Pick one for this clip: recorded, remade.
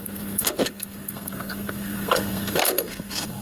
remade